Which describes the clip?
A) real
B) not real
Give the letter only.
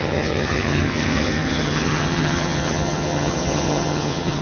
B